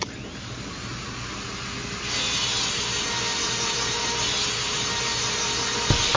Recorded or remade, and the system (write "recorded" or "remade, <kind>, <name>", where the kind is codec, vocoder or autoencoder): recorded